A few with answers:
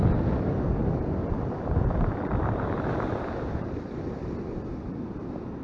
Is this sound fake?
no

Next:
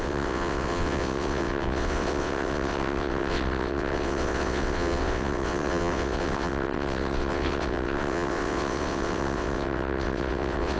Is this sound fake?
yes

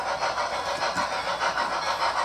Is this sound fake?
no